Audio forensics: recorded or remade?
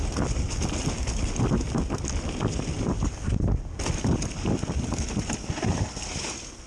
recorded